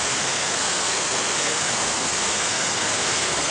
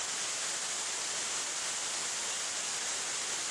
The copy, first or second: first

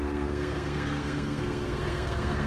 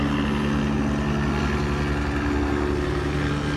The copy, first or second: first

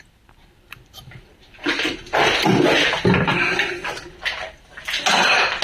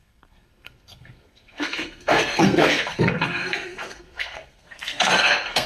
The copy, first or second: second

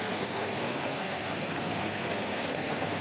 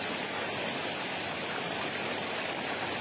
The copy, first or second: first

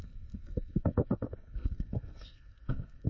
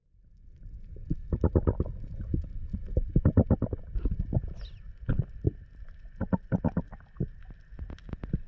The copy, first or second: first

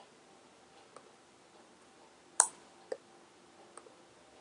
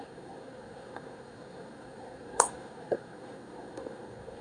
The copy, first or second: second